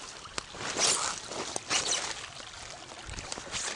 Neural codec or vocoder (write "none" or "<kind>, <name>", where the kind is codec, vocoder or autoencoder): none